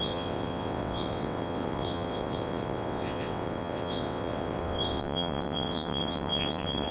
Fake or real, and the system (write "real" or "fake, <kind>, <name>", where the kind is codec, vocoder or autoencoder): fake, vocoder, WaveNeXt